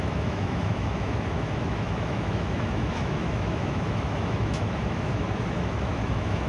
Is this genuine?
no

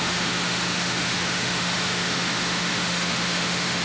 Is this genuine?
no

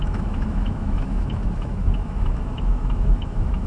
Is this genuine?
no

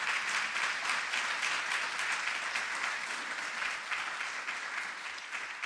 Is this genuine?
yes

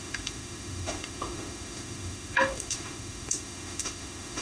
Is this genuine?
no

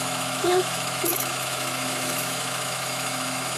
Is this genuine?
no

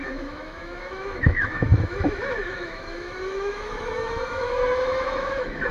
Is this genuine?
no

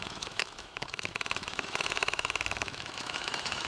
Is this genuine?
no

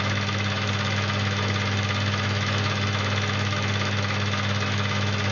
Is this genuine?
no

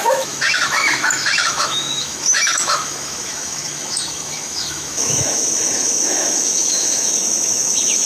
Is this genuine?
no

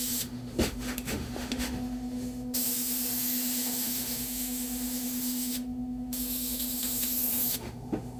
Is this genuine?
no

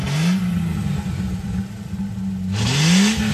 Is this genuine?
yes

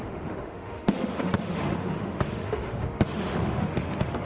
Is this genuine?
no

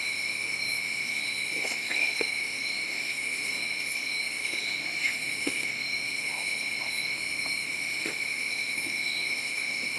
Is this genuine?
no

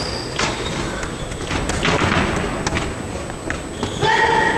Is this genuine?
yes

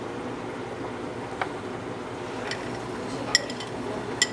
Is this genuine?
yes